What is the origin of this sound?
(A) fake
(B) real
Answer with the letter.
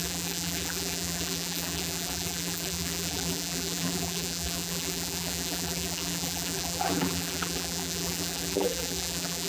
A